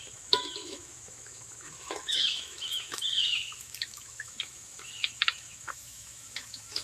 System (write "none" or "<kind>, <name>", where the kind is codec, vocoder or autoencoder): autoencoder, DAC-VAE